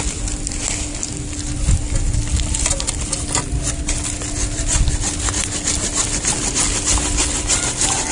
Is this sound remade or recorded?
recorded